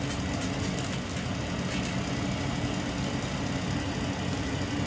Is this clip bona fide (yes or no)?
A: yes